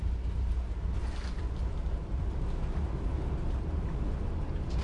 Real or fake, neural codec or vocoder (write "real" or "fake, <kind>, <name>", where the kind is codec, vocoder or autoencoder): real